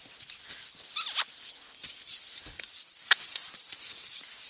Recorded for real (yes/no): yes